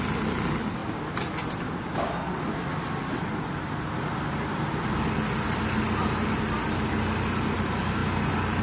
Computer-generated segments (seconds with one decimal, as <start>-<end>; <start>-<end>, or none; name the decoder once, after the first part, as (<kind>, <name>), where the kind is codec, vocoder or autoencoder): none